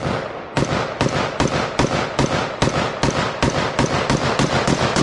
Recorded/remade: recorded